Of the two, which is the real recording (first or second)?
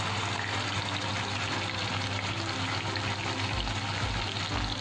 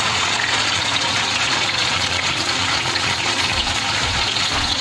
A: first